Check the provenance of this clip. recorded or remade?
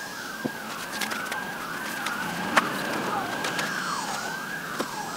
recorded